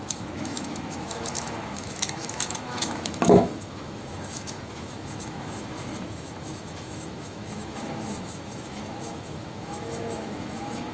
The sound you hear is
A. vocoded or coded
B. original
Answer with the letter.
A